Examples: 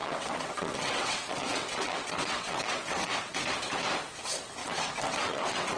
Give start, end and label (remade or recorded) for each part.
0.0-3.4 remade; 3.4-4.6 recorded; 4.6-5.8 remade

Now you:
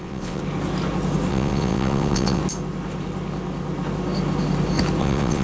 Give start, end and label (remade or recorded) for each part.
0.0-0.4 remade; 0.4-1.3 recorded; 1.3-2.4 remade; 2.4-5.0 recorded; 5.0-5.4 remade

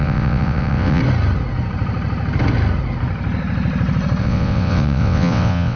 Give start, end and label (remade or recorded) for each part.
0.0-1.0 remade; 1.0-4.2 recorded; 4.2-5.8 remade

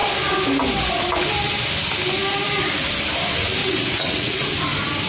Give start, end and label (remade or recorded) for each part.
0.0-3.6 recorded; 3.6-4.6 remade; 4.6-5.1 recorded

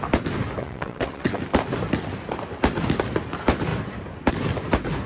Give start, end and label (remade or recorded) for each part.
0.0-0.6 recorded; 0.6-1.4 remade; 1.4-5.1 recorded

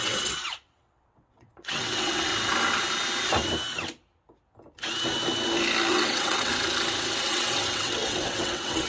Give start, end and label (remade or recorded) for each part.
0.0-2.3 remade; 2.3-5.9 recorded; 5.9-6.5 remade; 6.5-7.2 recorded; 7.2-8.9 remade

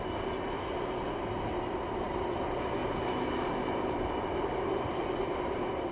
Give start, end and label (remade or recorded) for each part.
0.0-5.9 recorded

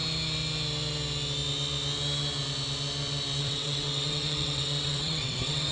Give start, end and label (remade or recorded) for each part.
0.0-3.4 recorded; 3.4-5.7 remade